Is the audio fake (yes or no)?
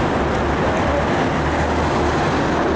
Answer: no